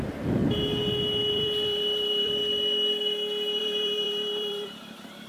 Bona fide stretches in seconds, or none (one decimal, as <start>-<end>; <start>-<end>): 0.4-1.3; 2.4-3.6